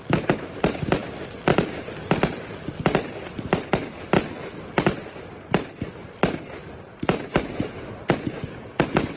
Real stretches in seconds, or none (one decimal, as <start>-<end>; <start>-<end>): 0.0-9.2